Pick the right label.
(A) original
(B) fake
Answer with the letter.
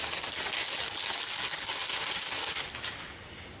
A